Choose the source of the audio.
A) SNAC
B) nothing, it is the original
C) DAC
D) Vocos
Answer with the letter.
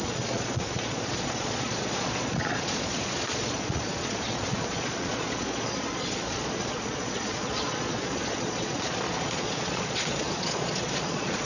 D